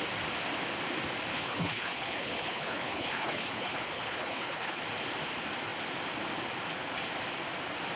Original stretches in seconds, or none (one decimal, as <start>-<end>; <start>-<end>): 0.0-1.3; 4.8-8.0